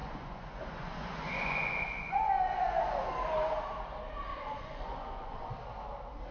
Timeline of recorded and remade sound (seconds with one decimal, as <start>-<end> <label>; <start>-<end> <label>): 0.0-3.1 remade; 3.1-4.3 recorded; 4.3-5.5 remade; 5.5-6.3 recorded